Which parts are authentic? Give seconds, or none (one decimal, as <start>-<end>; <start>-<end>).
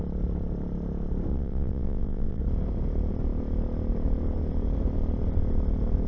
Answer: 0.0-1.3; 2.4-6.1